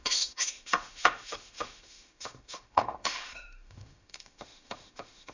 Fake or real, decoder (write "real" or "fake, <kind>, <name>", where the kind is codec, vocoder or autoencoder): fake, autoencoder, DAC-VAE